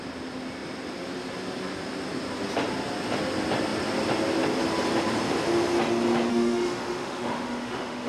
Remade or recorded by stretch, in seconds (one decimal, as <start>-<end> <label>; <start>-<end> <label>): 0.0-6.3 recorded; 6.3-8.1 remade